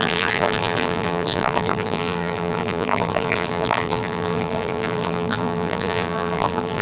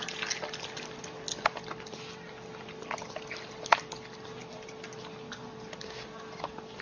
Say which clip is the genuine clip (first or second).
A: second